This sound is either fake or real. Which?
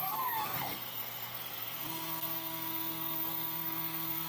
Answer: fake